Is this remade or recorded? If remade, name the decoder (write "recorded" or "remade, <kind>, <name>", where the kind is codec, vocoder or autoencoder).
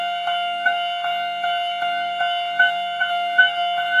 remade, autoencoder, DAC-VAE